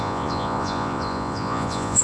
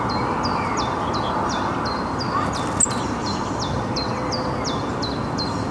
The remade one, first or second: first